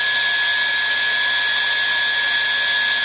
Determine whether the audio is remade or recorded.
recorded